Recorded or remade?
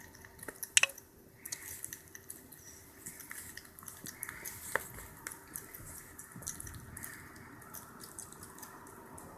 recorded